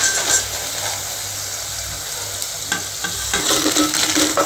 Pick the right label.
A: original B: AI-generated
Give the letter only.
A